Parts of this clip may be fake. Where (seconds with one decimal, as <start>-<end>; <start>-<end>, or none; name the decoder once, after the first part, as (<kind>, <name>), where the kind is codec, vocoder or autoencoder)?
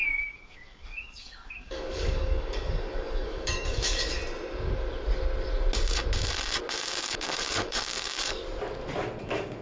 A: 0.0-4.2 (codec, DAC); 6.7-8.4; 9.2-9.6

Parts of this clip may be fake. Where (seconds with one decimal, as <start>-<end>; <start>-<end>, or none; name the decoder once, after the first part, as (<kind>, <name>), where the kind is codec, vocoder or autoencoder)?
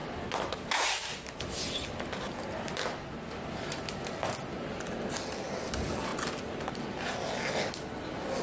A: none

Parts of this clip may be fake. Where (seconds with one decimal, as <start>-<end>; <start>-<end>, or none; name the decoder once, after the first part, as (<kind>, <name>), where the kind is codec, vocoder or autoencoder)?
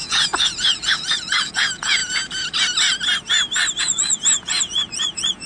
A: 0.0-2.0 (vocoder, Vocos); 3.8-5.5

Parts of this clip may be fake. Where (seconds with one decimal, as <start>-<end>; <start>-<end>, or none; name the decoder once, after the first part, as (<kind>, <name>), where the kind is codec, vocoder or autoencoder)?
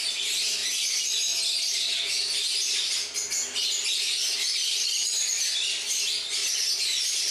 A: 6.4-7.3 (vocoder, BigVGAN v2)